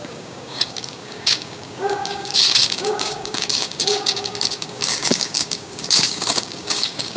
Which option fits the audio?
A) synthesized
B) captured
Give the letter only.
A